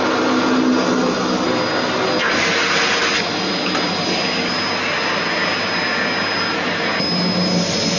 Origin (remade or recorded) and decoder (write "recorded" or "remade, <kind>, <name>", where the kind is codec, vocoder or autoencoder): recorded